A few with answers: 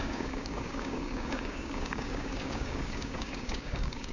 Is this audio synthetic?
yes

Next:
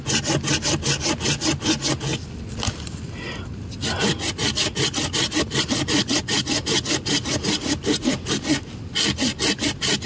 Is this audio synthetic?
no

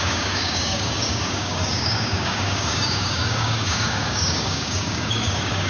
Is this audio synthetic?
yes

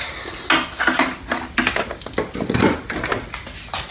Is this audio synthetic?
no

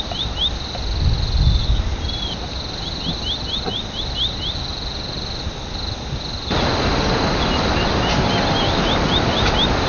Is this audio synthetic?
no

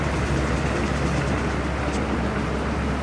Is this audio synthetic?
no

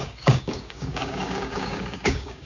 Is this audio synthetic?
yes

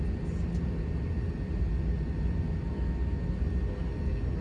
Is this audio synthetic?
no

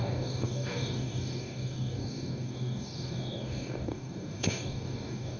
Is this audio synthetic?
yes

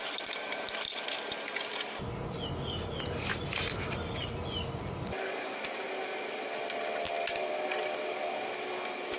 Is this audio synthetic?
no